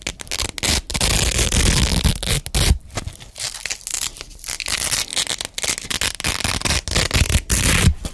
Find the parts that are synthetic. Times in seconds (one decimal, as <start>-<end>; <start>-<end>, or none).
0.9-1.7